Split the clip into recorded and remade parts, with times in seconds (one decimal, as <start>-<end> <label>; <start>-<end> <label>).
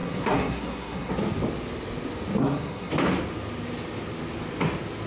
0.0-1.1 remade; 1.1-2.4 recorded; 2.4-2.9 remade; 2.9-5.1 recorded